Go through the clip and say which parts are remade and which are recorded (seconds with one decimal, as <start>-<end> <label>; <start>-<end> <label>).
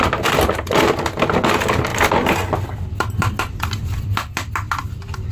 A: 0.0-5.3 recorded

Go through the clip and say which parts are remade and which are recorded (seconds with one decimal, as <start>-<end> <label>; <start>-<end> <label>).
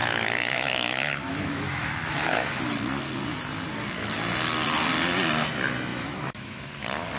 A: 0.0-2.6 remade; 2.6-5.9 recorded; 5.9-6.7 remade; 6.7-7.2 recorded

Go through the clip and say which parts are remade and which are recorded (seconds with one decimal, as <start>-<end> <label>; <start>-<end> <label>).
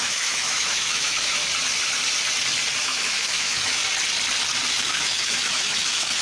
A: 0.0-1.4 remade; 1.4-2.8 recorded; 2.8-3.8 remade; 3.8-4.7 recorded; 4.7-6.2 remade